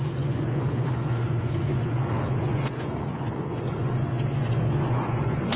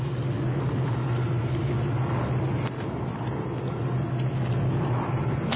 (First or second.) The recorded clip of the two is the second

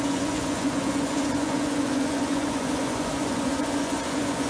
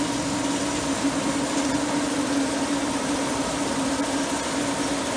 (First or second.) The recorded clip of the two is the second